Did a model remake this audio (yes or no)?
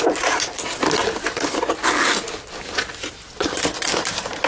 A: no